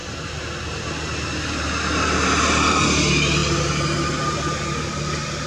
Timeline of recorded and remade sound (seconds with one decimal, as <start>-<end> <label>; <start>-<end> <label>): 0.0-2.8 remade; 2.8-5.5 recorded